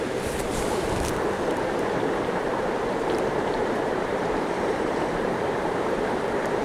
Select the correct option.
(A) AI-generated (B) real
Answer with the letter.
A